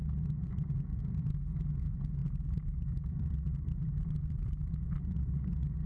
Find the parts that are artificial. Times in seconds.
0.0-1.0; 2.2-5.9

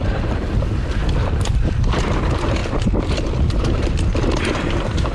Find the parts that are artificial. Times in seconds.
0.0-1.0; 1.5-2.6; 3.2-5.1

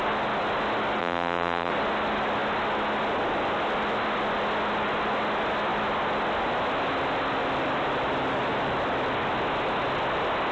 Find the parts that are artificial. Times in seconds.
1.0-1.7

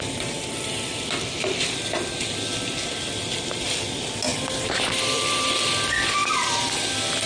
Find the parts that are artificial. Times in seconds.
4.3-5.3; 6.2-6.7

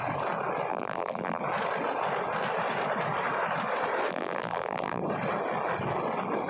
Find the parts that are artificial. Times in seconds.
0.7-1.4; 4.1-5.0

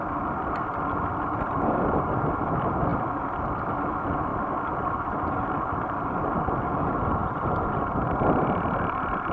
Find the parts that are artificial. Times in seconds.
2.9-3.7; 7.2-8.1